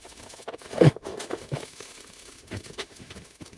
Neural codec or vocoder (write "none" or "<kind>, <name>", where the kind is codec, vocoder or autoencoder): autoencoder, DAC-VAE